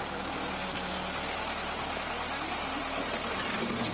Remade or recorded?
recorded